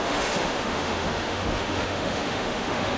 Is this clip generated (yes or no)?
yes